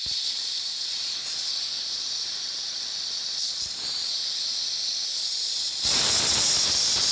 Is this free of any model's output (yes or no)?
yes